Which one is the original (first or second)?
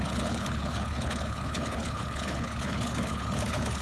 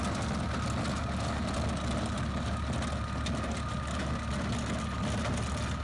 second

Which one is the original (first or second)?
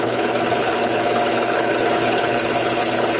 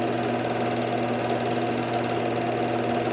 second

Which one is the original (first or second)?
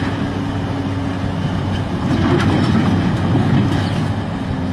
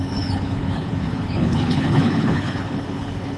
first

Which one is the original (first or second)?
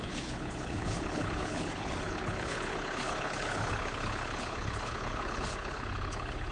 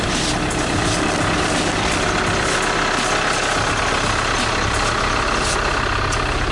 second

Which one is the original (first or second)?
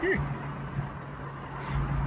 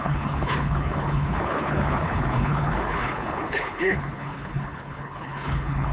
first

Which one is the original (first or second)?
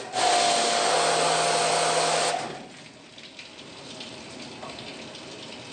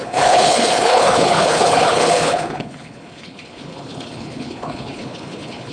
first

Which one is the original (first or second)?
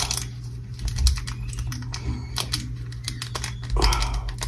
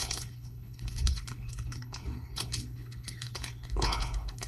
first